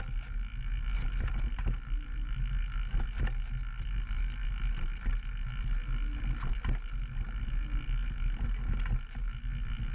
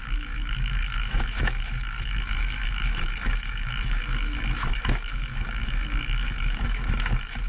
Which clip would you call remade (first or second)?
second